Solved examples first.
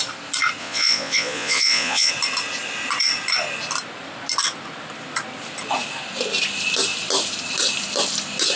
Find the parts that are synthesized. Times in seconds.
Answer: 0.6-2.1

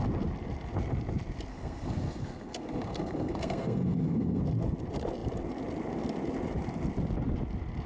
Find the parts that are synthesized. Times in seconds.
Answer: 1.5-4.4

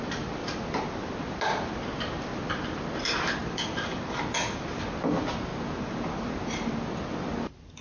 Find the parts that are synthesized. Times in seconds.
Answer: 3.4-4.2; 5.5-6.7

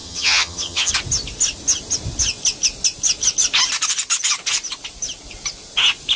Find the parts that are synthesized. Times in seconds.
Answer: 0.0-0.9

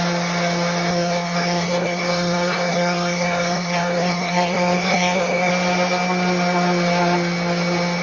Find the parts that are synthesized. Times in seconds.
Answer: 0.9-5.5

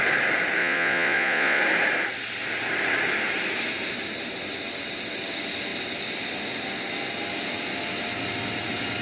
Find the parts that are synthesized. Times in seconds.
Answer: 0.6-1.6

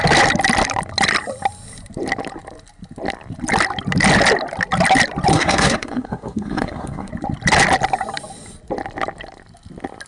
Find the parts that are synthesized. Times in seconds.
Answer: 5.3-7.1